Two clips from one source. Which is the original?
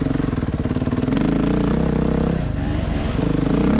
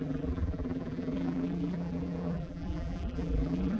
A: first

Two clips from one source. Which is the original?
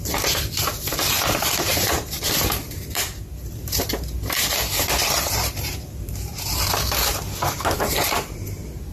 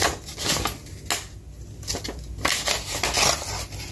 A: second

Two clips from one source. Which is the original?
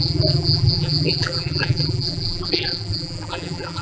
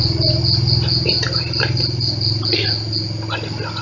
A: second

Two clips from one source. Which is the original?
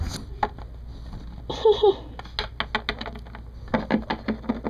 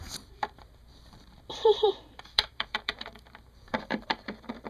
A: first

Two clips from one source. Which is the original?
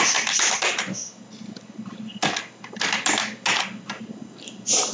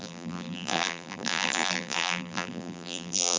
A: first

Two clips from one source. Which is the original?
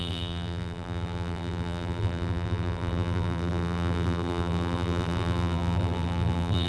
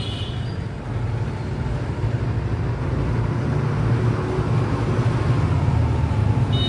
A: second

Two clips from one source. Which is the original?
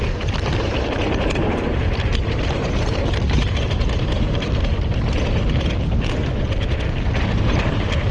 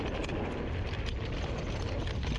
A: second